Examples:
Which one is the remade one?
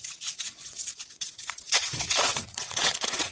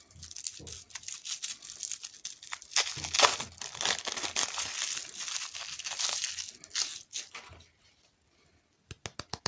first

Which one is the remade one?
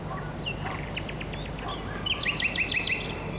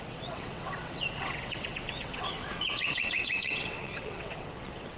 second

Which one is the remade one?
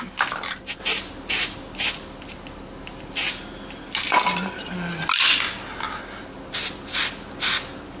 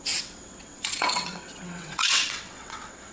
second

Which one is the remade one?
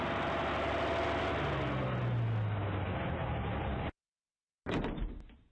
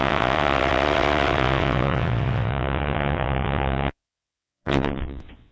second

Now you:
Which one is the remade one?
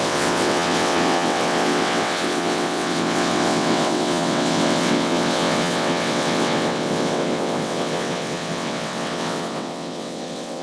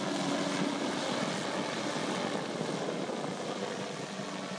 first